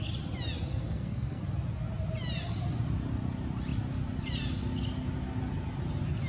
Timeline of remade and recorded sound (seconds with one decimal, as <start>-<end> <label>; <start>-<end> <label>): 0.0-0.7 recorded; 0.7-1.4 remade; 1.4-6.3 recorded